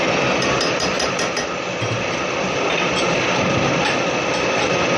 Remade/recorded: recorded